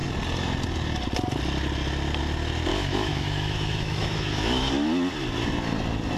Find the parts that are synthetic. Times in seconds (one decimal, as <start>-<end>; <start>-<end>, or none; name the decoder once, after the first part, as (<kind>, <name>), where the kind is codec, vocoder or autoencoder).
2.7-4.7 (autoencoder, DAC-VAE)